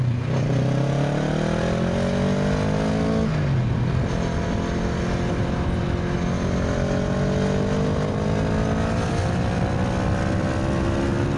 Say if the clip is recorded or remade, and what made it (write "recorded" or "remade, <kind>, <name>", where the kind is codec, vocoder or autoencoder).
recorded